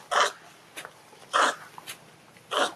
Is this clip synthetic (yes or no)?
no